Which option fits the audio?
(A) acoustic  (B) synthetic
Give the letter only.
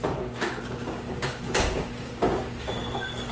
B